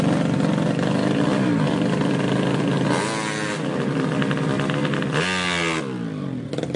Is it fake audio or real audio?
real